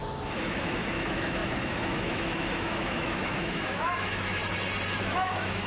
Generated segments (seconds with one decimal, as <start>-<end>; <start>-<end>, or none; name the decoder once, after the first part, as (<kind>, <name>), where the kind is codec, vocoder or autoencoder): 0.0-4.4 (autoencoder, DAC-VAE); 5.0-5.7